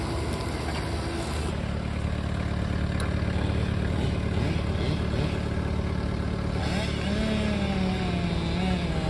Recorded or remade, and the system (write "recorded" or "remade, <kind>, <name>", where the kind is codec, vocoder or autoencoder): recorded